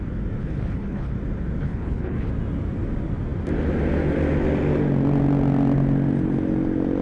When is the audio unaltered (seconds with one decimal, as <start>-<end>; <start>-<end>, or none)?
0.0-0.4; 1.1-1.6; 2.3-7.0